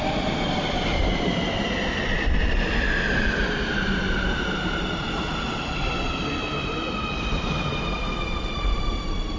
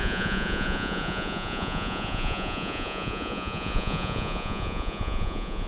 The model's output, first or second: second